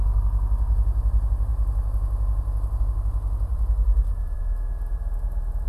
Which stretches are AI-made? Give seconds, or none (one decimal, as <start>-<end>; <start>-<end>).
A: 3.5-4.4